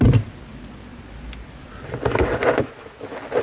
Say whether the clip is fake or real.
real